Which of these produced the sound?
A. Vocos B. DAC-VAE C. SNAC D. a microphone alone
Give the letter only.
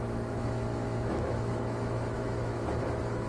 B